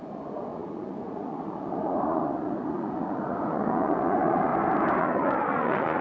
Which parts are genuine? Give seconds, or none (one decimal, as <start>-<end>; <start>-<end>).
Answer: 4.5-5.0